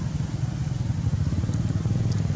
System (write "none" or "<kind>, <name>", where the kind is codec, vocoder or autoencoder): none